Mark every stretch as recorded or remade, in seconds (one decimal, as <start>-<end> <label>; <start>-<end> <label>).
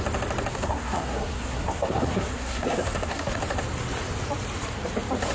0.0-0.5 recorded; 0.5-3.4 remade; 3.4-5.3 recorded